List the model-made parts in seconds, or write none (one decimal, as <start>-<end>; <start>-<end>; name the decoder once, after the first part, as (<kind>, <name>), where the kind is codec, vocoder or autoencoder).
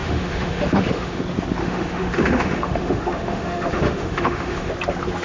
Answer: 0.0-1.2 (autoencoder, DAC-VAE); 1.6-4.7